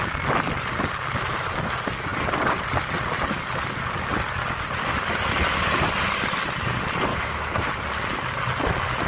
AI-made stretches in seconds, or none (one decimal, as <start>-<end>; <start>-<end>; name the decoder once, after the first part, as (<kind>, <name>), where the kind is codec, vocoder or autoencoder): 7.1-7.7 (autoencoder, DAC-VAE)